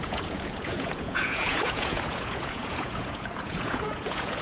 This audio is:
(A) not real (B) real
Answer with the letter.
A